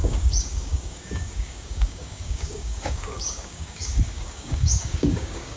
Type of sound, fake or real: fake